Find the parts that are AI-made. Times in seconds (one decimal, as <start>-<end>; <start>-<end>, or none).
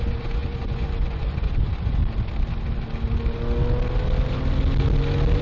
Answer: 0.0-2.0